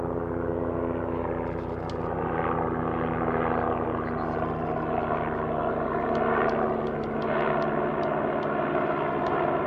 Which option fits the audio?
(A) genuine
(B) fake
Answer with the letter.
A